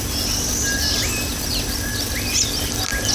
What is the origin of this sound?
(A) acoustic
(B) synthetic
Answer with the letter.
A